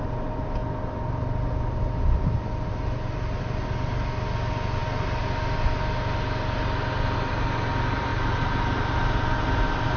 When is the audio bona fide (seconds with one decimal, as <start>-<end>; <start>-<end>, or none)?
0.0-10.0